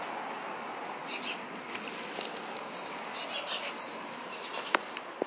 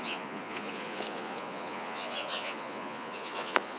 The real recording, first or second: first